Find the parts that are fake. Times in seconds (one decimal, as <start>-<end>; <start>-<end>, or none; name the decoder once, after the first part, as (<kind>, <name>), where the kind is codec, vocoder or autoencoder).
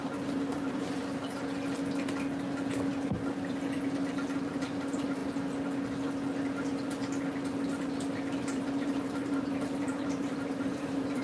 0.0-1.0 (vocoder, BigVGAN v2); 4.5-5.2; 8.4-11.2